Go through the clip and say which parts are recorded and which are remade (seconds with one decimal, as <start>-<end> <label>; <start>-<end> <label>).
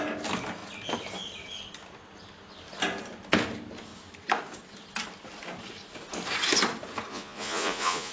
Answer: 0.0-7.1 recorded; 7.1-8.1 remade